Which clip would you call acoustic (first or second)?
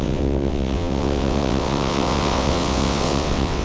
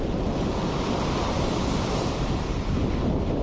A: second